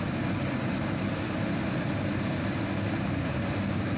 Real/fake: fake